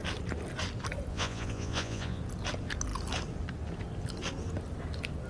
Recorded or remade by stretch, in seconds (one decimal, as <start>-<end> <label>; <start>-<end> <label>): 0.0-1.1 recorded; 1.1-2.2 remade; 2.2-5.3 recorded